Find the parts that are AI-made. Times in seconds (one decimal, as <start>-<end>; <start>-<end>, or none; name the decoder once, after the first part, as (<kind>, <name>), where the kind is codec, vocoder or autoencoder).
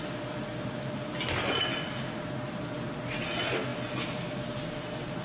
none